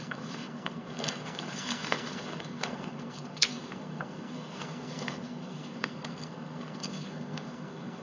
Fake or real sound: fake